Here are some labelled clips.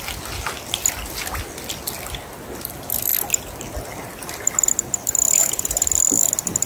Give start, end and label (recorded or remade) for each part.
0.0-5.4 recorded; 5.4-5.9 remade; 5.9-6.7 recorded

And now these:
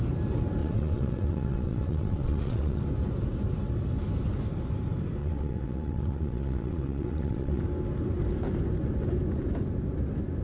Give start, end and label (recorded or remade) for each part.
0.0-0.6 recorded; 0.6-2.8 remade; 2.8-5.2 recorded; 5.2-7.6 remade; 7.6-10.4 recorded

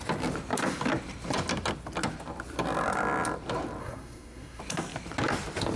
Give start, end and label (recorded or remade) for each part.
0.0-3.8 recorded; 3.8-4.6 remade; 4.6-5.8 recorded

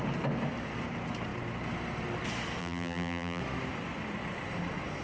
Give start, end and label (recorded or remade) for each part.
0.0-2.6 recorded; 2.6-3.4 remade; 3.4-5.0 recorded

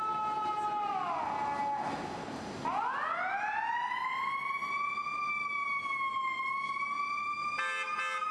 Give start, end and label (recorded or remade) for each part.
0.0-8.3 recorded

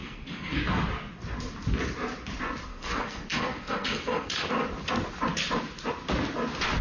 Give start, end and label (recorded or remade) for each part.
0.0-0.6 remade; 0.6-2.7 recorded; 2.7-4.5 remade; 4.5-6.8 recorded